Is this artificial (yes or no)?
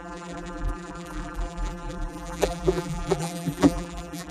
yes